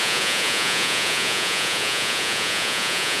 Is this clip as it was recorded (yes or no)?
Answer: no